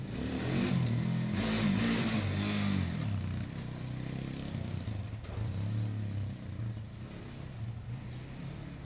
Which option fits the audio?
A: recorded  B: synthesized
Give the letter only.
A